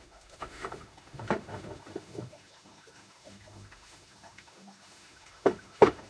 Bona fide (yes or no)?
no